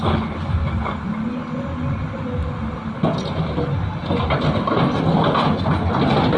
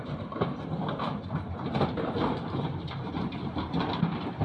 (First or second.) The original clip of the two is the first